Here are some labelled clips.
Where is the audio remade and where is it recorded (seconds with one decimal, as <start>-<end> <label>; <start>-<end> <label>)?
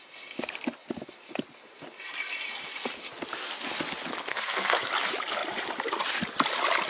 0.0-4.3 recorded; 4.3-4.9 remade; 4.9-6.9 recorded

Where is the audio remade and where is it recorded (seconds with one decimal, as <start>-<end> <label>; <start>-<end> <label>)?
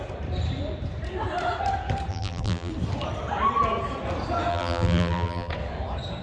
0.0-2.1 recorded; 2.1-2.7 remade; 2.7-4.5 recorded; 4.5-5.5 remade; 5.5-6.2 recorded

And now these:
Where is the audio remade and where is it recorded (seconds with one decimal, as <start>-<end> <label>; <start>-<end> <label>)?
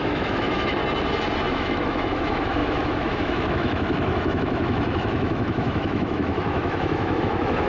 0.0-0.8 remade; 0.8-1.5 recorded; 1.5-7.7 remade